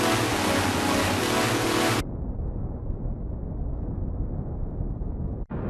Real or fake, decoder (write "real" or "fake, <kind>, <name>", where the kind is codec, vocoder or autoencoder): real